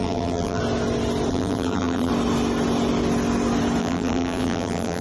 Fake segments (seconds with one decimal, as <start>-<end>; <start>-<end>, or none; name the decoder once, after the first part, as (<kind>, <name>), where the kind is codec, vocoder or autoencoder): 0.0-0.6 (vocoder, BigVGAN v2); 1.3-2.1; 3.8-5.0